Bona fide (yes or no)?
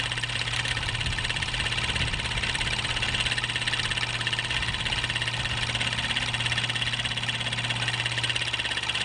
yes